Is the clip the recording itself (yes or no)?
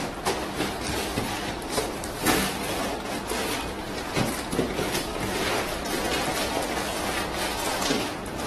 yes